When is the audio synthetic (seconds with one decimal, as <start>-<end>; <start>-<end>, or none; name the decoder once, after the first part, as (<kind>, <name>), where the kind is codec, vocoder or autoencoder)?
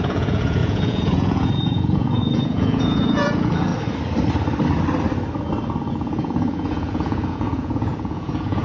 0.0-3.7 (vocoder, Vocos); 5.9-8.6